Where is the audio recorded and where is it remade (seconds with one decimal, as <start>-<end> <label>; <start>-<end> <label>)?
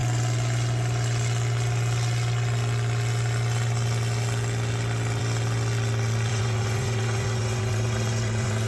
0.0-6.3 recorded; 6.3-8.7 remade